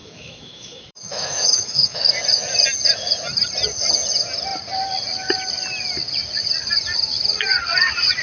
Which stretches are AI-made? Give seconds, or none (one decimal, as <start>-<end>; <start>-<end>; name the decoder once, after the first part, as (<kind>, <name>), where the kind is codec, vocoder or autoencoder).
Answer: 0.0-2.1 (autoencoder, DAC-VAE)